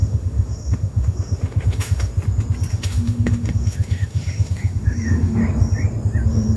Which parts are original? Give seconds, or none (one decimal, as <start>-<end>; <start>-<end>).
2.1-2.7; 5.4-6.6